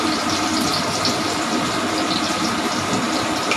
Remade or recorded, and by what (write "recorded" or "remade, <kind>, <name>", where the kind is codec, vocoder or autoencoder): recorded